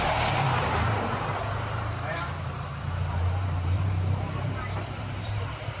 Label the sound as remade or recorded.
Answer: remade